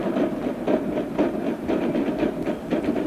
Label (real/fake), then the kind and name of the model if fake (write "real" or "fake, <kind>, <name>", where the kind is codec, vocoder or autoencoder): real